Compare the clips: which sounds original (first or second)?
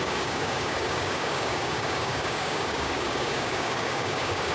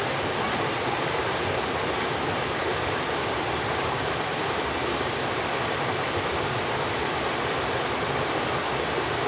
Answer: second